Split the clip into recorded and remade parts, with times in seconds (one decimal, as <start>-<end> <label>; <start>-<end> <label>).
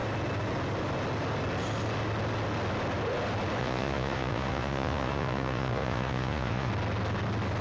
0.0-3.6 recorded; 3.6-6.7 remade; 6.7-7.6 recorded